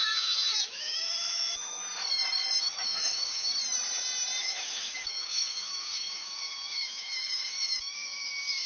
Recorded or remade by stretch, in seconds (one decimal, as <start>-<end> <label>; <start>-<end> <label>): 0.0-1.8 remade; 1.8-2.6 recorded; 2.6-3.5 remade; 3.5-4.4 recorded; 4.4-8.7 remade